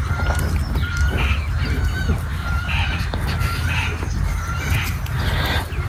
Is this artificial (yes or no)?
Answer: no